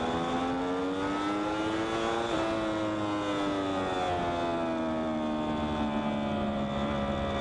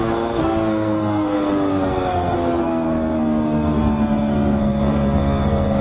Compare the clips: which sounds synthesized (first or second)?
second